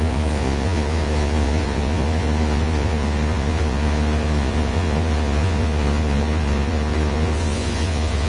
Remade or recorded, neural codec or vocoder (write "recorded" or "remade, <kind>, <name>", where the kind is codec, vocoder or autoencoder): remade, vocoder, Vocos